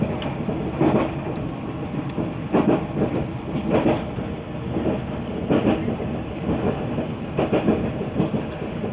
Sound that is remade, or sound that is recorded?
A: recorded